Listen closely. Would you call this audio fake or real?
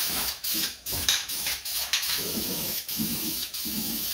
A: fake